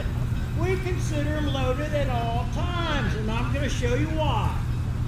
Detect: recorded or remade recorded